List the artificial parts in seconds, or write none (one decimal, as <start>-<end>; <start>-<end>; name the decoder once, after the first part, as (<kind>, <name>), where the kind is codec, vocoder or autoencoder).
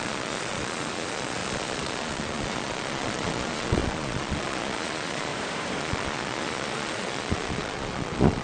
0.0-5.3 (vocoder, Vocos); 5.8-8.4